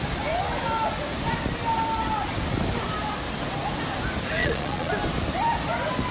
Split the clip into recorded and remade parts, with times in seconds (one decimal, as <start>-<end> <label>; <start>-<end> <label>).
0.0-4.4 recorded; 4.4-4.9 remade; 4.9-6.1 recorded